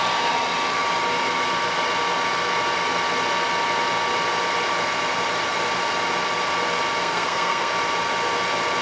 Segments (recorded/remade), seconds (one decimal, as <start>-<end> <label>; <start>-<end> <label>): 0.0-7.0 recorded; 7.0-7.7 remade; 7.7-8.8 recorded

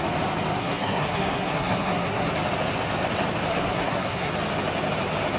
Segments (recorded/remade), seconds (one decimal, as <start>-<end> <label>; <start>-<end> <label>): 0.0-0.6 recorded; 0.6-2.3 remade; 2.3-3.5 recorded; 3.5-4.3 remade; 4.3-5.4 recorded

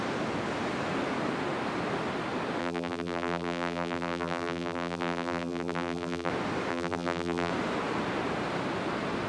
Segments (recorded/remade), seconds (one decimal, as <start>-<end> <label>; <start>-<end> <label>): 0.0-2.6 recorded; 2.6-6.3 remade; 6.3-6.7 recorded; 6.7-7.5 remade; 7.5-9.3 recorded

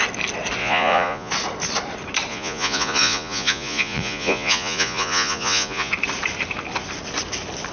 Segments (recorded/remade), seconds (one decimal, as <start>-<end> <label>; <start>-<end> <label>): 0.0-0.6 recorded; 0.6-1.3 remade; 1.3-2.3 recorded; 2.3-5.9 remade; 5.9-7.7 recorded

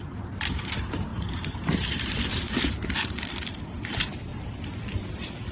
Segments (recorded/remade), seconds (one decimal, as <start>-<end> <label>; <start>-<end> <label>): 0.0-4.3 remade; 4.3-5.0 recorded; 5.0-5.5 remade

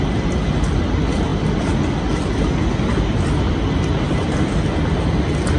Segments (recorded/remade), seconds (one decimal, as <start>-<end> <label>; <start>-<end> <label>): 0.0-5.6 recorded

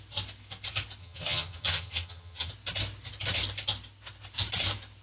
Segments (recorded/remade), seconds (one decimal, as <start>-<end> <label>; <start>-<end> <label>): 0.0-1.0 recorded; 1.0-2.5 remade; 2.5-5.0 recorded

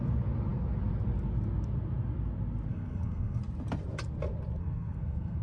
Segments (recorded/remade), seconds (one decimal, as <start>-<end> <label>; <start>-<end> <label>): 0.0-2.7 recorded; 2.7-3.4 remade; 3.4-4.6 recorded; 4.6-5.4 remade